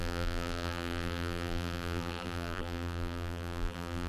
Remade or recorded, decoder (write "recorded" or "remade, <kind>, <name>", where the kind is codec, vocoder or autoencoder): remade, vocoder, BigVGAN v2